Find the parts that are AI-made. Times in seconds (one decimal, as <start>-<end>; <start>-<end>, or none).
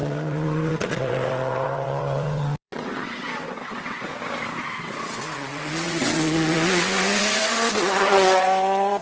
0.0-4.1; 4.6-9.0